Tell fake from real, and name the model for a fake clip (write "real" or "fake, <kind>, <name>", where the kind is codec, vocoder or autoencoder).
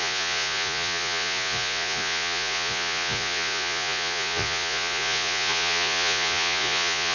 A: fake, vocoder, Vocos